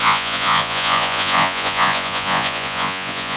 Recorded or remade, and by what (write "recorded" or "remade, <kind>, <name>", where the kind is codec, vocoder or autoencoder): remade, vocoder, Vocos